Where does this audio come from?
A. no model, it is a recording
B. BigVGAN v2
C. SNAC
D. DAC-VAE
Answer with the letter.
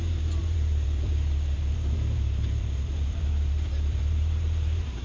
B